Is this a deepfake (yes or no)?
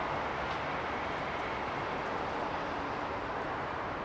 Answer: no